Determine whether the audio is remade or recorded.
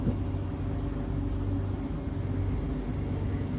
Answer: recorded